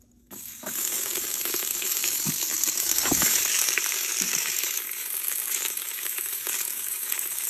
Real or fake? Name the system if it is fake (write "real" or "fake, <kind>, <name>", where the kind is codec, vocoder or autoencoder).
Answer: fake, codec, DAC